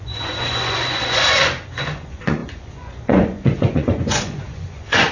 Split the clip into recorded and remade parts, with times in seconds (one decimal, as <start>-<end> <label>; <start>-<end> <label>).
0.0-5.1 remade